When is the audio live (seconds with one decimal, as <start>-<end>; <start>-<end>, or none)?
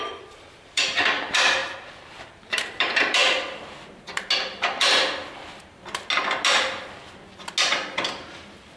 3.2-7.6